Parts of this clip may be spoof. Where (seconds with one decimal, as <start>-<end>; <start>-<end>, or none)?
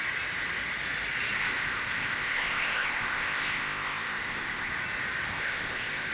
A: 1.4-4.7; 5.3-6.1